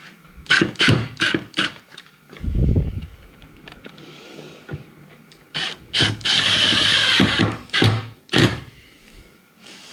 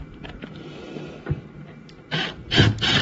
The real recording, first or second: second